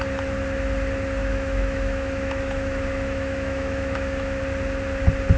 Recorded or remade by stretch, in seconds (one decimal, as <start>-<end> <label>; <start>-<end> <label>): 0.0-1.2 recorded; 1.2-4.4 remade; 4.4-5.4 recorded